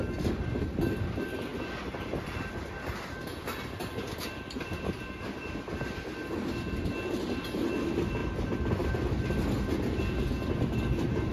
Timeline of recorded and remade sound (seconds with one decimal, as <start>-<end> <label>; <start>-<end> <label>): 0.0-11.3 recorded